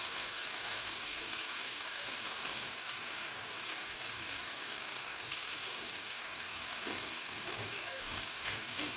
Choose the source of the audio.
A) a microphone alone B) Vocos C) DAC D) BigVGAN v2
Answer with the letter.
C